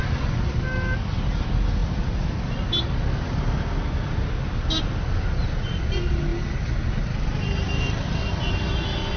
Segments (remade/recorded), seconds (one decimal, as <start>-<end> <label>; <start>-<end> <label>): 0.0-9.2 recorded